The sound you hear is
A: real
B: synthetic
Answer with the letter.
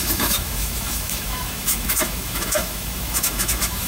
B